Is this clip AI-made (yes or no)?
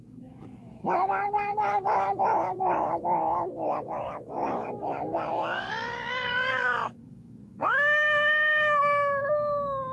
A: yes